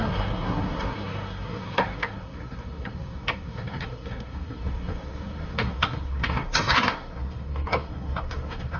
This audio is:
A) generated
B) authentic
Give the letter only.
A